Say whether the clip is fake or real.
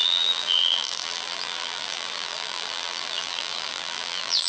fake